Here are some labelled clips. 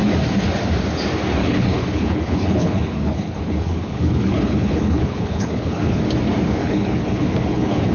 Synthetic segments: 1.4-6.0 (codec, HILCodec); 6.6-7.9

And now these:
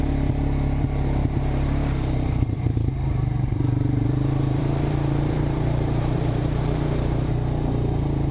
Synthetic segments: 2.4-7.3 (vocoder, BigVGAN v2)

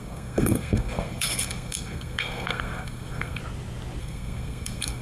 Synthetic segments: 0.0-3.4 (codec, SNAC); 4.0-5.0

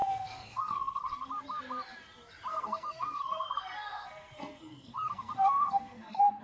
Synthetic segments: 0.0-1.3 (codec, SNAC); 2.5-6.4

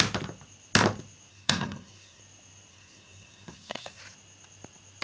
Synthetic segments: 1.3-2.2 (codec, SNAC); 2.7-4.0

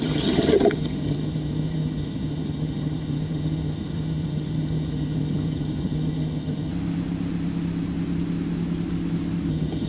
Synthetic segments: 0.0-6.7 (vocoder, HiFi-GAN); 9.5-9.9